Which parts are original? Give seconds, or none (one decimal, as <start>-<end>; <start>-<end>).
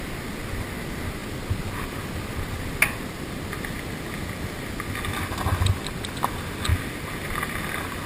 0.0-8.1